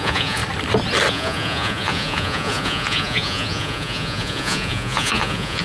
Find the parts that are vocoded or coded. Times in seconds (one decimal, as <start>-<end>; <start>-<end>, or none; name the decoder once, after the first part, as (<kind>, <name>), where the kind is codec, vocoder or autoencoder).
0.0-0.4 (vocoder, Vocos); 1.1-5.6